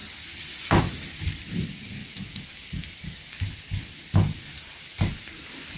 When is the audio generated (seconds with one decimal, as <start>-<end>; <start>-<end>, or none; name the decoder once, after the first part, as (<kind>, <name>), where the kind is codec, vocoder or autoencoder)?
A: 0.0-0.8 (vocoder, BigVGAN v2)